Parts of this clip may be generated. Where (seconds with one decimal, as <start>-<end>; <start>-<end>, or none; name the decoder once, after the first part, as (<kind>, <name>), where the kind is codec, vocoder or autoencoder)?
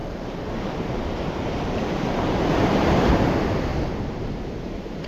0.0-3.1 (vocoder, BigVGAN v2); 3.7-4.6